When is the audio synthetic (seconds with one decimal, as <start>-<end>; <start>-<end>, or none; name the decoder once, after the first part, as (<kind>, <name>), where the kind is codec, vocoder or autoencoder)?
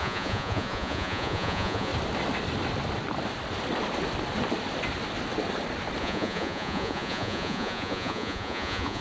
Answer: 0.0-1.9 (vocoder, Vocos); 6.0-9.0